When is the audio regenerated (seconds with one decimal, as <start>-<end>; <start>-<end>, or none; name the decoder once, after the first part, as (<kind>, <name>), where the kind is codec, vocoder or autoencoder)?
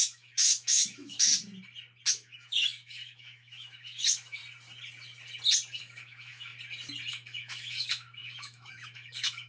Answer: 0.0-1.3 (autoencoder, DAC-VAE); 2.1-4.4; 5.8-6.5; 7.1-9.5